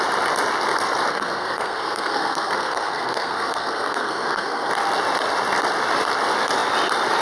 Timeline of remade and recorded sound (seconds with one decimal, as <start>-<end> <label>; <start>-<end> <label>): 0.0-1.1 recorded; 1.1-4.7 remade; 4.7-7.2 recorded